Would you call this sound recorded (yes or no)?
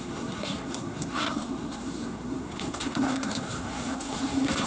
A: no